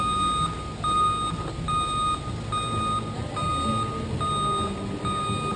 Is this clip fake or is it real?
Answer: real